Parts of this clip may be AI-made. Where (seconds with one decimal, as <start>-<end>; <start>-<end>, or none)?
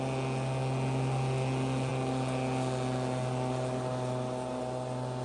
none